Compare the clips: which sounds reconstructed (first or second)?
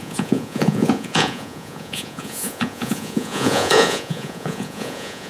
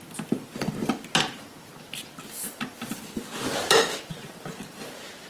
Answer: first